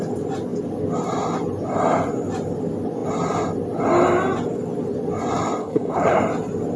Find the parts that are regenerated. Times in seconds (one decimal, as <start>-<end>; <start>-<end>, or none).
5.6-6.2